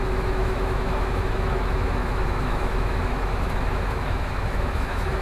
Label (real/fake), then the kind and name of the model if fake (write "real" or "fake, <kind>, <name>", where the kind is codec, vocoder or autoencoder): fake, autoencoder, DAC-VAE